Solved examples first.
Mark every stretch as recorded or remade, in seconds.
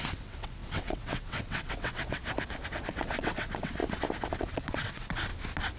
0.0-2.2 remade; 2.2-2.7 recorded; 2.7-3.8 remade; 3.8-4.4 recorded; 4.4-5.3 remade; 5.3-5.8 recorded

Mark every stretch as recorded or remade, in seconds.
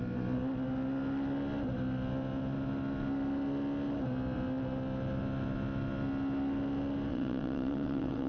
0.0-7.1 recorded; 7.1-8.3 remade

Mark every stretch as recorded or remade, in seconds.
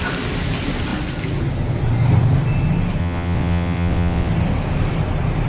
0.0-3.0 recorded; 3.0-4.3 remade; 4.3-5.5 recorded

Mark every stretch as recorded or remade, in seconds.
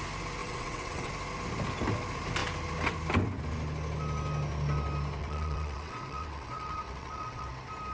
0.0-0.4 recorded; 0.4-1.1 remade; 1.1-5.2 recorded; 5.2-7.5 remade; 7.5-7.9 recorded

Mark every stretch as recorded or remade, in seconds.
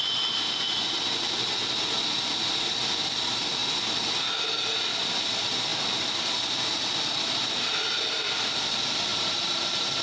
0.0-10.0 recorded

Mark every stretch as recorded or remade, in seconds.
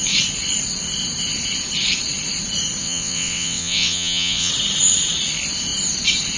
0.0-2.8 recorded; 2.8-4.5 remade; 4.5-6.4 recorded